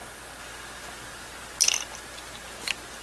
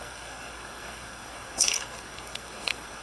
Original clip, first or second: first